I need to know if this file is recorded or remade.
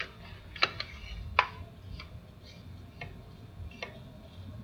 recorded